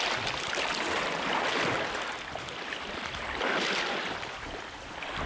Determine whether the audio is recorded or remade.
recorded